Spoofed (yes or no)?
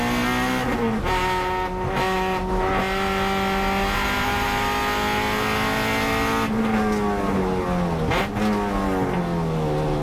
no